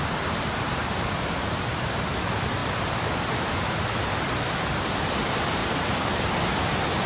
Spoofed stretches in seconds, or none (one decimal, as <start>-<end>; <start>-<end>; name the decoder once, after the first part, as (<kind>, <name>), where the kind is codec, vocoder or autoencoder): 0.8-1.7 (vocoder, BigVGAN v2); 2.6-3.6; 5.6-6.2